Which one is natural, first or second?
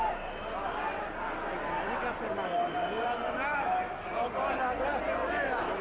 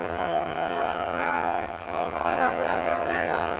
first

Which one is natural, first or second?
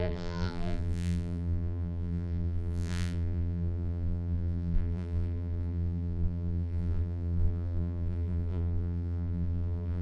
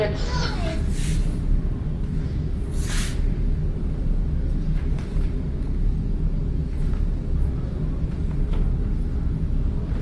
second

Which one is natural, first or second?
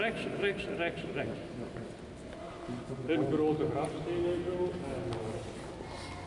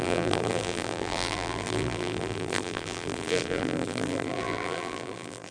first